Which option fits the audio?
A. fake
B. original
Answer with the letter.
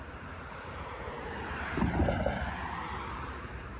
A